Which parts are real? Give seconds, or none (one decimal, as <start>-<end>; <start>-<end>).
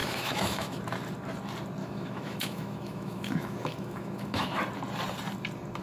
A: 0.8-1.8; 4.6-5.8